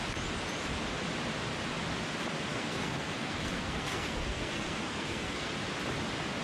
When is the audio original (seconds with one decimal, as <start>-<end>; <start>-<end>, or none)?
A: 0.0-2.5; 5.5-6.4